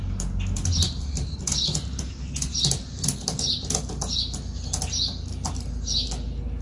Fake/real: real